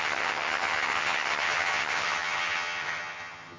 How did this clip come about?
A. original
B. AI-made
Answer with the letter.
B